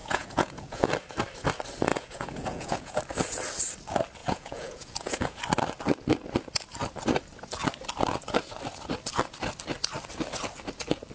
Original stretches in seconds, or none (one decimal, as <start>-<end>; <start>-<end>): 0.9-1.9; 3.0-4.2; 5.4-11.1